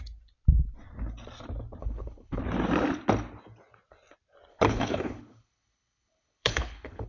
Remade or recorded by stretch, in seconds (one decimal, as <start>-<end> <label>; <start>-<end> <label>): 0.0-1.8 recorded; 1.8-2.4 remade; 2.4-4.5 recorded; 4.5-7.1 remade